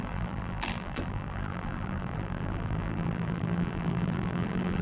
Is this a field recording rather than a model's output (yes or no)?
no